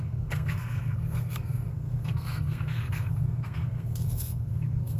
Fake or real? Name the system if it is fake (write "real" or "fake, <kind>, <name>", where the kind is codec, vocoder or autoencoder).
fake, codec, SNAC